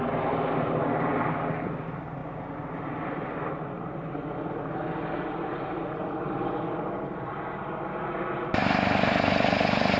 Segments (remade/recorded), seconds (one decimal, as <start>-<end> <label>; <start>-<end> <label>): 0.0-10.0 recorded